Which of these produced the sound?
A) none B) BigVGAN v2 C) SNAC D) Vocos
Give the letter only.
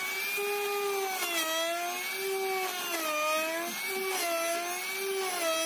A